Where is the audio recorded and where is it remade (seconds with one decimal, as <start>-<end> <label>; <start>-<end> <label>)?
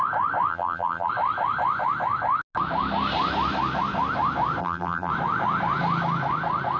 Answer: 0.0-0.5 recorded; 0.5-1.1 remade; 1.1-4.6 recorded; 4.6-5.1 remade; 5.1-6.8 recorded